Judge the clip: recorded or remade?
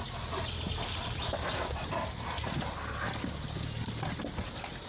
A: recorded